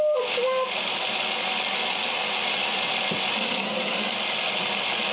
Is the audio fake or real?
real